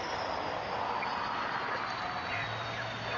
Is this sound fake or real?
real